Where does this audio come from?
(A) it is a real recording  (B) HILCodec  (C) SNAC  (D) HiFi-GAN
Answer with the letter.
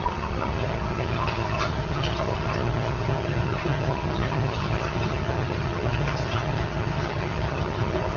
D